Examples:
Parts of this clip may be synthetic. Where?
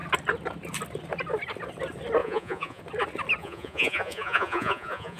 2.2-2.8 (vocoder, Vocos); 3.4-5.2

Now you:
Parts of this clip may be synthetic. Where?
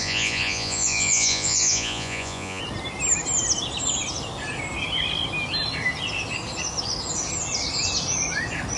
0.0-2.6 (vocoder, Vocos)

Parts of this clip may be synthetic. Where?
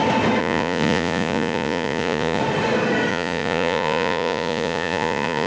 0.4-2.4 (vocoder, Vocos); 3.1-5.5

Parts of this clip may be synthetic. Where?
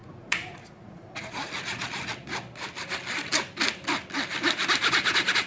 0.0-1.5 (vocoder, Vocos)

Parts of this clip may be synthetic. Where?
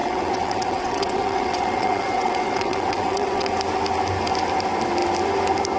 0.0-3.5 (vocoder, WaveNeXt)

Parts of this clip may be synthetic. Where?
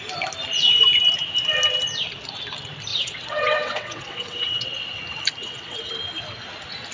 2.9-5.0 (vocoder, WaveNeXt); 5.4-5.9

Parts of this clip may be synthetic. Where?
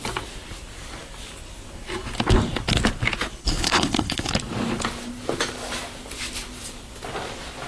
3.4-4.3 (codec, HILCodec)